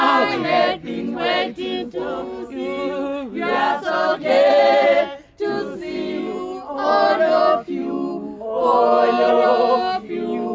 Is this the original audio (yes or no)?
yes